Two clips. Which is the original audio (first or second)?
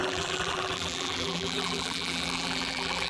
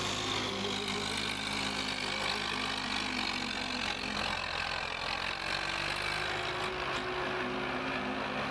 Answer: second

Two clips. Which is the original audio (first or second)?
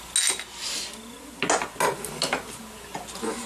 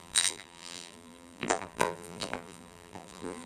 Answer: first